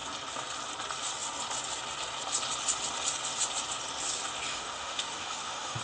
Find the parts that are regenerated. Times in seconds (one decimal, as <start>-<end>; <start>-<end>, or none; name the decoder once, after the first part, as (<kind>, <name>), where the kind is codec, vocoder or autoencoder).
4.5-5.8 (autoencoder, DAC-VAE)